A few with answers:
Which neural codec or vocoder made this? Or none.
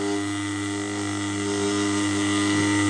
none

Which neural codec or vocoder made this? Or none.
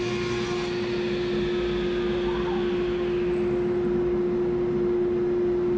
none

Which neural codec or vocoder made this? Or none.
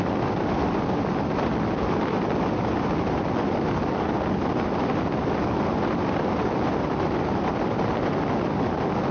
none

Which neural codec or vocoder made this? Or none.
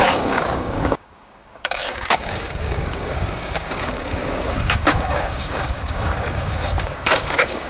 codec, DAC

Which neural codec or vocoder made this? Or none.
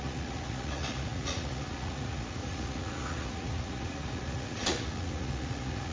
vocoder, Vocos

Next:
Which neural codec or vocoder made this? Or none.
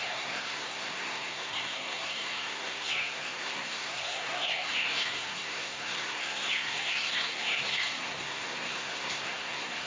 codec, SNAC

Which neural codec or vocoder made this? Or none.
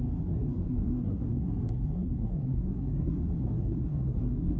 codec, SNAC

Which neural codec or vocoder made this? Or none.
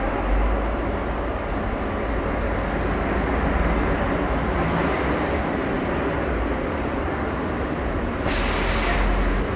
none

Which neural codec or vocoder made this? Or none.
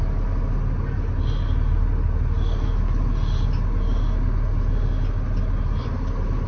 none